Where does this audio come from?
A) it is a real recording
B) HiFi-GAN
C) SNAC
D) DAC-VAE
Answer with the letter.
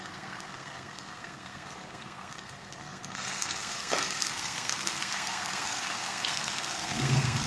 C